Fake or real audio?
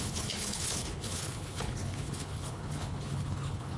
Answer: fake